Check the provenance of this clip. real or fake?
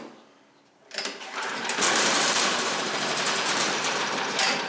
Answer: fake